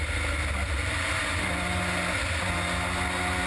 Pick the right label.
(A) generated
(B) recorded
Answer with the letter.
B